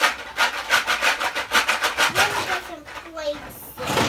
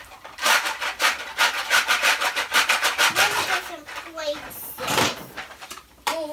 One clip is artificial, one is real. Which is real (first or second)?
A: first